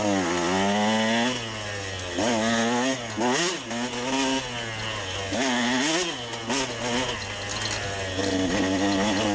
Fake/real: real